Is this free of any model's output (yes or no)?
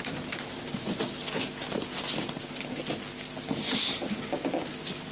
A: yes